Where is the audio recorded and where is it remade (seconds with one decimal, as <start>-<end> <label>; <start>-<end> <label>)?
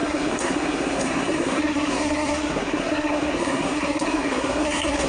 0.0-5.1 remade